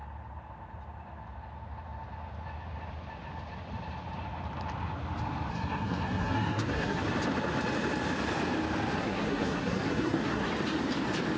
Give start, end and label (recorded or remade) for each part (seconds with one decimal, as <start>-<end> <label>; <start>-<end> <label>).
0.0-5.5 recorded; 5.5-7.0 remade; 7.0-9.0 recorded; 9.0-10.5 remade; 10.5-11.4 recorded